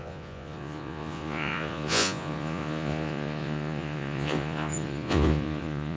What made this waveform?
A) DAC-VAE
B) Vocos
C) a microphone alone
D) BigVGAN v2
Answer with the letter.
B